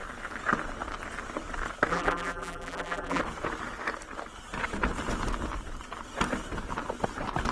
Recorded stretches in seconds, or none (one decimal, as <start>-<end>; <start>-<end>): 0.0-1.9; 3.2-7.5